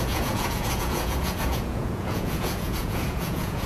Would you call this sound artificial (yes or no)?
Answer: yes